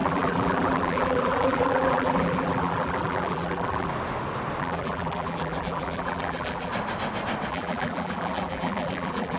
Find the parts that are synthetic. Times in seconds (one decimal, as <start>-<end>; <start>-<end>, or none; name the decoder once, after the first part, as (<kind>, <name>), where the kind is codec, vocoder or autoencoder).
0.0-3.9 (vocoder, BigVGAN v2); 4.6-6.7; 7.5-9.4